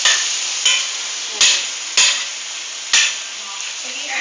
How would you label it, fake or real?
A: real